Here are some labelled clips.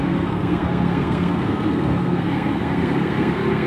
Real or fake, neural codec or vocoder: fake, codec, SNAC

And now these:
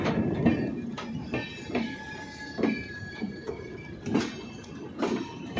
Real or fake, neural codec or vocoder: fake, vocoder, BigVGAN v2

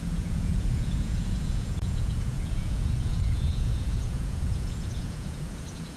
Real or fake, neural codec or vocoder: fake, vocoder, Vocos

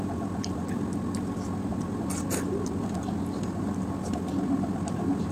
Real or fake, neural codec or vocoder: real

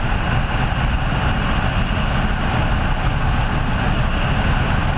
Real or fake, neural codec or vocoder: real